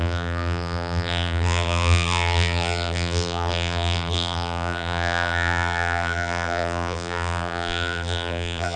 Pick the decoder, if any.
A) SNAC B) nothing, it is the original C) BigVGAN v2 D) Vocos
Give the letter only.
C